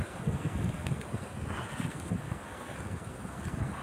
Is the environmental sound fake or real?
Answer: fake